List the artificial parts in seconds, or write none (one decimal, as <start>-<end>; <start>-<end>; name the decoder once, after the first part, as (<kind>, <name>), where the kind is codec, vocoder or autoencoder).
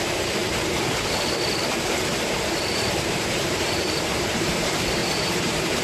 0.0-0.4 (vocoder, BigVGAN v2); 2.7-5.8